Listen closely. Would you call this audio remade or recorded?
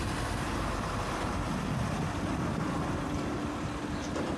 recorded